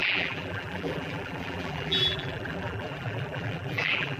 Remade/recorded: remade